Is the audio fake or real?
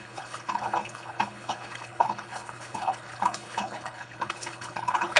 fake